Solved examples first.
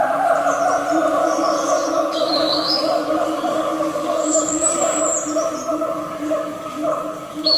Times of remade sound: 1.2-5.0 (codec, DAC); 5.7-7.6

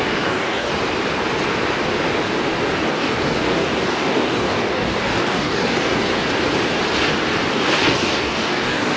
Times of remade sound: 0.0-0.7 (codec, DAC); 2.9-6.1; 7.5-9.0

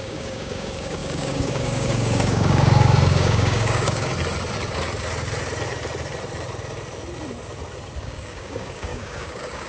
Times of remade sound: 0.0-4.1 (codec, DAC); 8.0-9.7

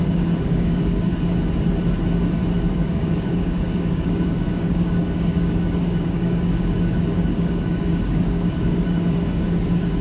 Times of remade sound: 0.0-1.1 (codec, DAC); 2.7-10.0

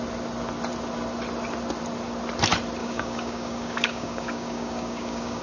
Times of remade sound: 2.8-5.4 (codec, DAC)

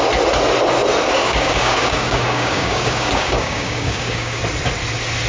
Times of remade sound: 1.2-4.4 (codec, DAC)

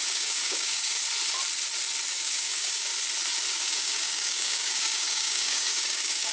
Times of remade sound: 0.0-1.0 (codec, DAC); 2.1-2.9; 3.5-6.3

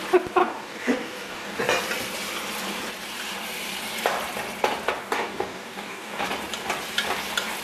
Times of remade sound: 0.4-1.6 (codec, DAC); 5.0-6.2